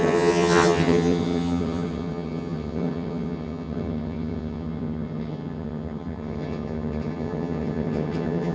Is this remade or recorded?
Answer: remade